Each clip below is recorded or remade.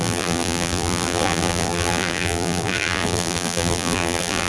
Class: remade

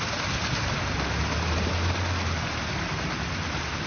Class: recorded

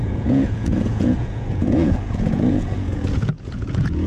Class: remade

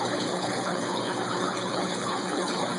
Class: remade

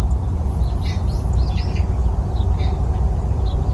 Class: recorded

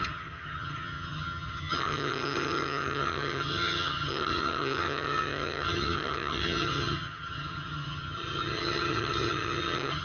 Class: remade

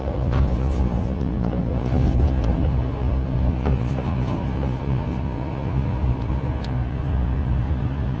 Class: remade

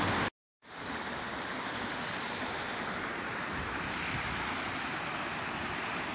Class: recorded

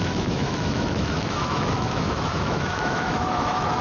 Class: remade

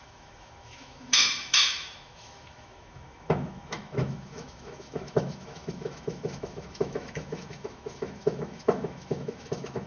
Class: remade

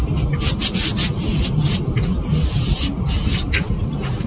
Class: recorded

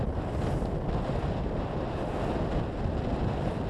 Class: recorded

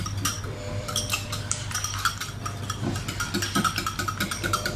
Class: remade